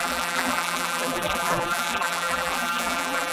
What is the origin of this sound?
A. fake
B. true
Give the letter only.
A